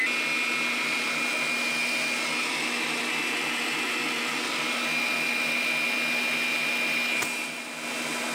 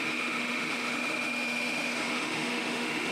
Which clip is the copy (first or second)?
second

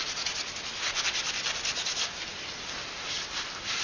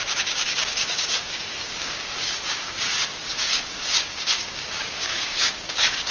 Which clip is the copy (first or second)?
second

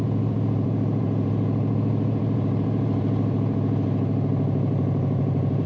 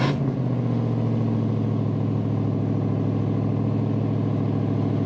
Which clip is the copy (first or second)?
first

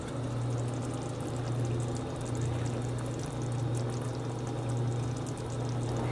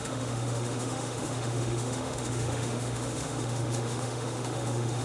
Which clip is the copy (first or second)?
second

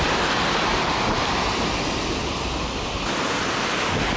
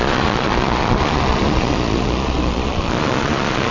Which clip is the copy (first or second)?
second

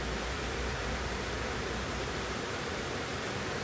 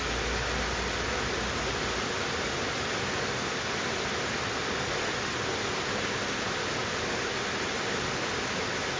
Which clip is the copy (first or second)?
first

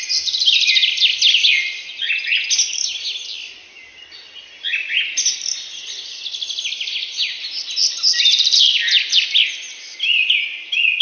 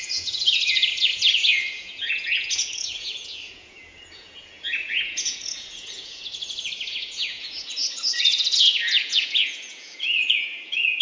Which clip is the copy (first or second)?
second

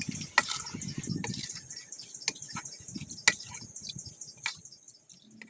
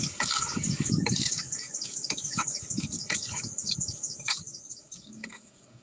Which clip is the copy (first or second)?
second